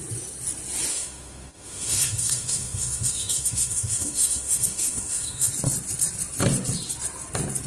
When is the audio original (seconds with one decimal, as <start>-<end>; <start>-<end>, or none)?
0.0-0.9; 5.5-7.7

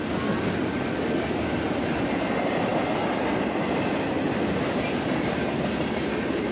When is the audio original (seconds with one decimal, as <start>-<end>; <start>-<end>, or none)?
0.0-6.5

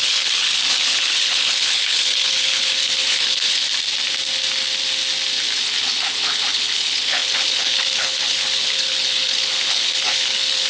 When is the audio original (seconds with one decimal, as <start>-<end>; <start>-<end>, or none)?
3.6-5.6

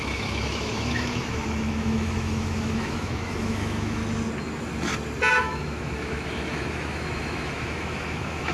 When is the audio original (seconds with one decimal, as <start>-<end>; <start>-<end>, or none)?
4.0-5.3